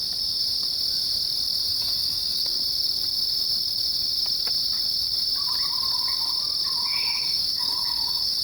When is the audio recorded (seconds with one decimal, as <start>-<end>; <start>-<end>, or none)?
0.0-1.7; 2.6-6.9